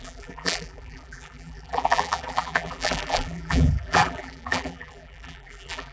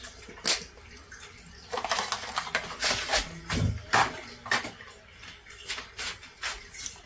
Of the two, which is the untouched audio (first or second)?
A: second